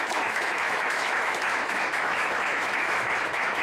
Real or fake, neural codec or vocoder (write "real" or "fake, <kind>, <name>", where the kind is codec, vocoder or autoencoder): fake, autoencoder, DAC-VAE